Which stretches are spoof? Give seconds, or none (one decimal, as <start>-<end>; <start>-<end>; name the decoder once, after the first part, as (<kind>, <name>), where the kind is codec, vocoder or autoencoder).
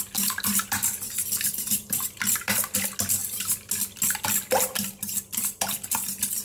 none